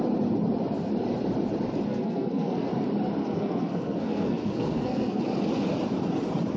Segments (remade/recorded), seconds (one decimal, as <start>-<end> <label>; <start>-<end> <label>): 0.0-1.9 recorded; 1.9-2.7 remade; 2.7-3.2 recorded; 3.2-5.2 remade; 5.2-6.6 recorded